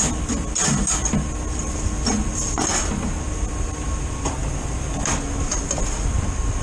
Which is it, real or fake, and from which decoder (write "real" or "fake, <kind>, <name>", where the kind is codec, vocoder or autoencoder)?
real